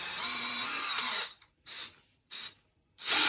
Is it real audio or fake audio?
fake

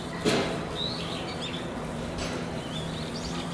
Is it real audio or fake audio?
real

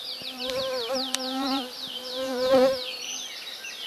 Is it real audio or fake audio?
fake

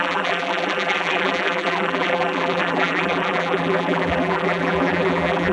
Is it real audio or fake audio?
fake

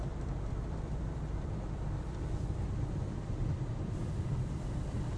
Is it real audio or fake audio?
fake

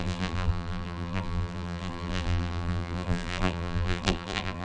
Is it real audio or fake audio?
fake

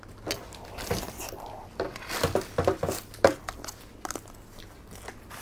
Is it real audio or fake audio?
real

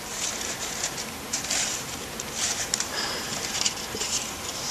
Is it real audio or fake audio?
fake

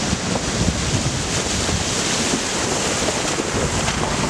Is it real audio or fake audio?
real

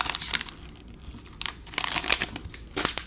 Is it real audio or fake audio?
real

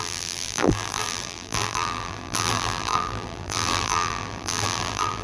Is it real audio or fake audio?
fake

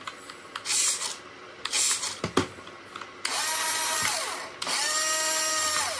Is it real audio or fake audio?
real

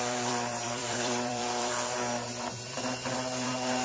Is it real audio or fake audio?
fake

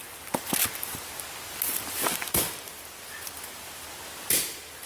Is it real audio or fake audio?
real